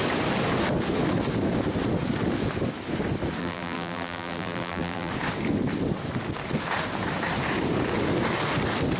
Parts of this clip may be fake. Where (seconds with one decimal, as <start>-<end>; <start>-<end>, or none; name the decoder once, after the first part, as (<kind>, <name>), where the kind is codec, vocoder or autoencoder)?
3.4-5.1 (vocoder, BigVGAN v2)